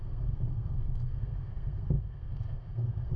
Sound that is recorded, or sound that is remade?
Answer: remade